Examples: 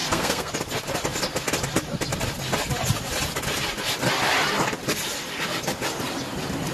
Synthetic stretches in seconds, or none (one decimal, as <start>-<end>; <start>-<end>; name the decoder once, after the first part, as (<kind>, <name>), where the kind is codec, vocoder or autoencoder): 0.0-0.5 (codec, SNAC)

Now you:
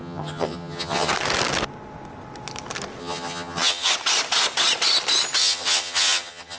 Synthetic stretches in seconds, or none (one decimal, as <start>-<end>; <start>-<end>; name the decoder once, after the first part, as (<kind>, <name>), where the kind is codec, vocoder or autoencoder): 0.0-1.1 (vocoder, HiFi-GAN); 3.0-3.9; 5.4-6.6

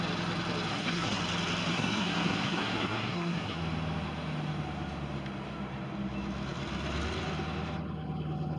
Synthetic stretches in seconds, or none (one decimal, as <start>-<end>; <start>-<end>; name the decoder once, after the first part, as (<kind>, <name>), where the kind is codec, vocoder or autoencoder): 0.7-1.2 (codec, SNAC); 1.7-3.6

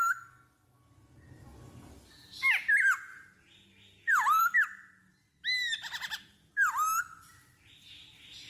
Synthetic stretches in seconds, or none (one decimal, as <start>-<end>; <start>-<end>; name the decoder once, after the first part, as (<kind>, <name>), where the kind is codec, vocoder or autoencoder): 3.1-4.4 (vocoder, BigVGAN v2)

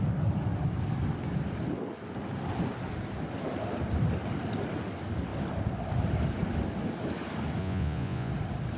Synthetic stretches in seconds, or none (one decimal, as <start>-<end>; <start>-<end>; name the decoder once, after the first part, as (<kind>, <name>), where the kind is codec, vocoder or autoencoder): 7.6-8.3 (vocoder, Vocos)

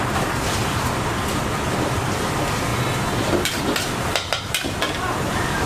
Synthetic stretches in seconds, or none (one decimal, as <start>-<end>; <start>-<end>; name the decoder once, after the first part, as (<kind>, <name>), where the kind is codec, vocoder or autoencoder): none

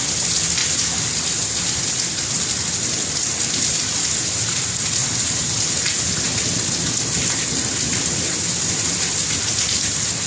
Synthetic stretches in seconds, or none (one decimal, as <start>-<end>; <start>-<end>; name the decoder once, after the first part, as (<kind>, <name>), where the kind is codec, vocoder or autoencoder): none

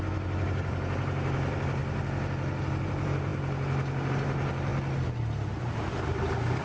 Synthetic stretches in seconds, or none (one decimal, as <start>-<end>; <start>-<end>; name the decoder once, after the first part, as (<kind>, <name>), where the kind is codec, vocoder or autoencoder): 0.0-1.8 (vocoder, BigVGAN v2); 2.6-3.3; 4.1-4.7